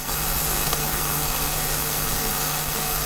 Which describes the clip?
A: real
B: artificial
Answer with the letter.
B